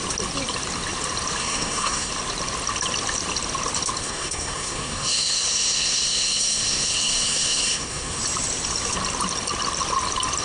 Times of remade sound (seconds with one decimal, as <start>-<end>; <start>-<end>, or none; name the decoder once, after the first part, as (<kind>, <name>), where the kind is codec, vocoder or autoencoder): 1.4-2.1 (codec, SNAC); 4.0-8.2